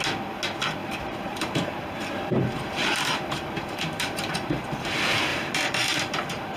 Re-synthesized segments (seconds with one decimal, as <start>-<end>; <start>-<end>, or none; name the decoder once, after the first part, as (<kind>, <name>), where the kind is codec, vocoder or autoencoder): 0.8-4.8 (vocoder, BigVGAN v2); 5.3-6.6